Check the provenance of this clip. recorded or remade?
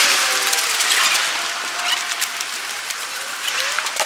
remade